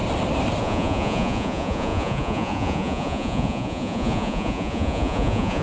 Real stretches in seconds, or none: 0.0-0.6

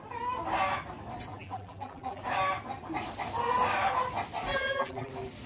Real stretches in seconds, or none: 0.0-1.3; 2.2-4.5; 5.1-5.5